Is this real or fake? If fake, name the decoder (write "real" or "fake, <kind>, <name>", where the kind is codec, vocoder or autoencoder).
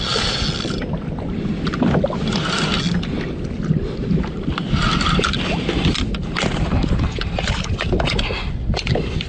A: real